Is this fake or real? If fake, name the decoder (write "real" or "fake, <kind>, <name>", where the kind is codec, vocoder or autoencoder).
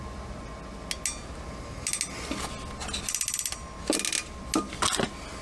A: real